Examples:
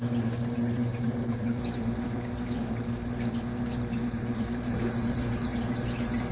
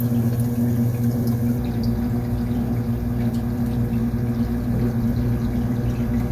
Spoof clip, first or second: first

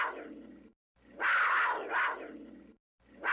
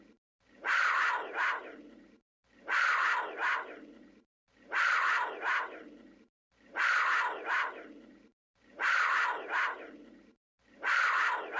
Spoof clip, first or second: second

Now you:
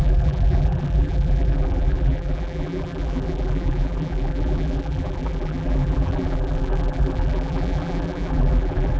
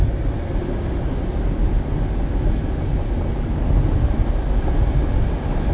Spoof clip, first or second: first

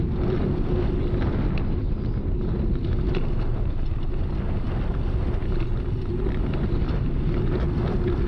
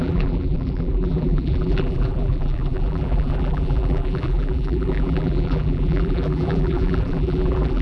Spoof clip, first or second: second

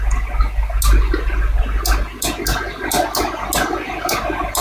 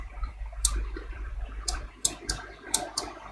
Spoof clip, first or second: second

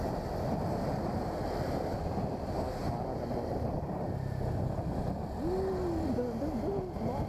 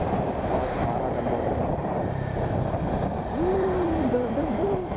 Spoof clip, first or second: second